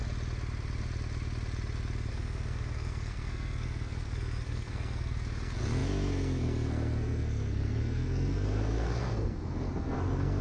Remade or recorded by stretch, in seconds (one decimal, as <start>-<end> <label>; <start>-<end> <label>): 0.0-2.1 recorded; 2.1-10.4 remade